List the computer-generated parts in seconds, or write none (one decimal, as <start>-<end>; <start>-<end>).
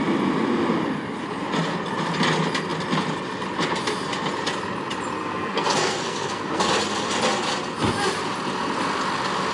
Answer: 5.2-6.7